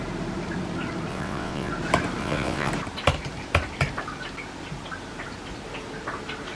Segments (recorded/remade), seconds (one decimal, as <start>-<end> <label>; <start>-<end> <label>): 0.0-1.1 recorded; 1.1-1.7 remade; 1.7-2.2 recorded; 2.2-2.7 remade; 2.7-6.5 recorded